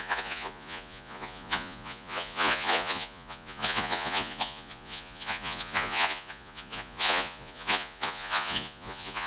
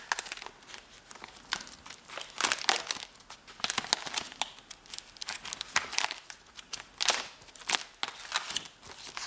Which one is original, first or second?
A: second